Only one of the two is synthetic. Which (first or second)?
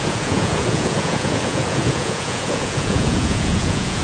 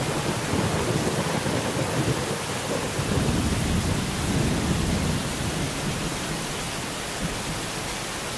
first